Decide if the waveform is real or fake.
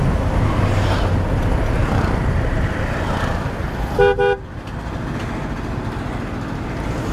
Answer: real